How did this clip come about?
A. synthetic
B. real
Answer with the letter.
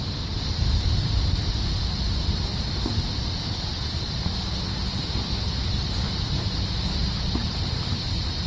B